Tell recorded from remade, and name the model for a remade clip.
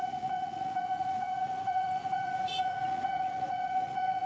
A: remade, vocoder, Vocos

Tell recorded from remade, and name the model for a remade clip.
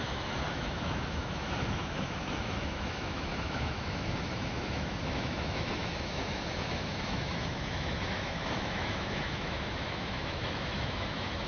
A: remade, autoencoder, DAC-VAE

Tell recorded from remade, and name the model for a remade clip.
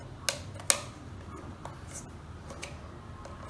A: recorded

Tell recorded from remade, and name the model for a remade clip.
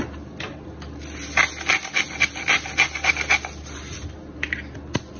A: recorded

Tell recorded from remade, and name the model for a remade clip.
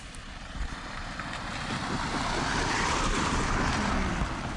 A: remade, vocoder, BigVGAN v2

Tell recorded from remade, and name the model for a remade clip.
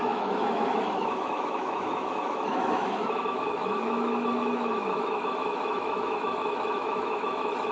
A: remade, autoencoder, DAC-VAE